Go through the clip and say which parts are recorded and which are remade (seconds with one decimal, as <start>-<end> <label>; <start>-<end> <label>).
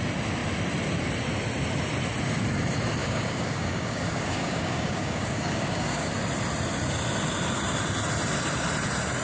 0.0-3.0 recorded; 3.0-6.1 remade; 6.1-9.2 recorded